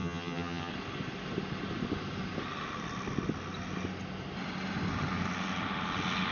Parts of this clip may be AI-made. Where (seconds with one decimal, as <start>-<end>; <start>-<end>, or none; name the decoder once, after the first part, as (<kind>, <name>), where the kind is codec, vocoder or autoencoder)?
0.0-0.7 (vocoder, HiFi-GAN)